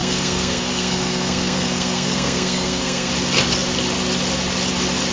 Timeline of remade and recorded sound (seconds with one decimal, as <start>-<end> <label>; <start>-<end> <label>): 0.0-3.1 remade; 3.1-5.1 recorded